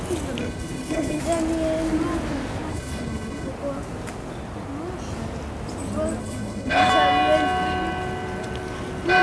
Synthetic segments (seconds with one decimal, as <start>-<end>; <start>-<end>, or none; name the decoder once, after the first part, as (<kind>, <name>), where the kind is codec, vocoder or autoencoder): 0.4-1.2 (codec, HILCodec); 2.7-3.5; 6.2-6.9